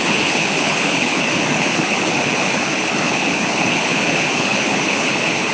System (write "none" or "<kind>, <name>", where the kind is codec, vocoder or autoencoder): codec, HILCodec